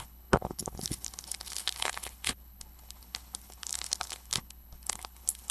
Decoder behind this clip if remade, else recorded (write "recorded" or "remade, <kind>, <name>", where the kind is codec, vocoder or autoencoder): remade, codec, HILCodec